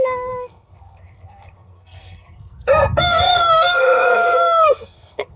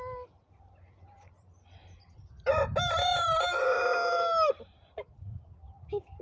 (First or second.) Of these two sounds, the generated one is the first